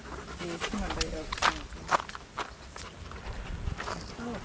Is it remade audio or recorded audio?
recorded